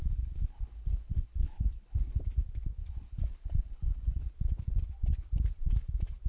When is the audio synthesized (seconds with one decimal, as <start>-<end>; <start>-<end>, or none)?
0.0-2.2; 2.8-4.3